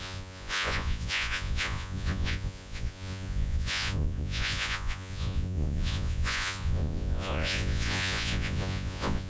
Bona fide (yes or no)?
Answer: no